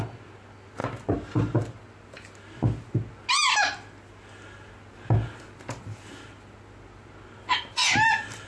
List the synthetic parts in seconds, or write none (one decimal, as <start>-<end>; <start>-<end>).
none